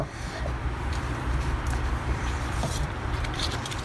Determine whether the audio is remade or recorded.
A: remade